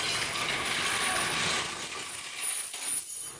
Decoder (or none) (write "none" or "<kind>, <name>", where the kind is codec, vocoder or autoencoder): none